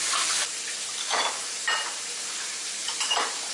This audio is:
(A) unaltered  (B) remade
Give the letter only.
B